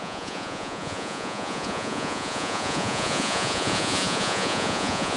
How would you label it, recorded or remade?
remade